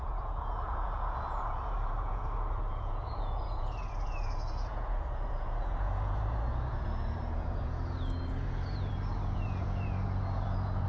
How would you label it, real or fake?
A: fake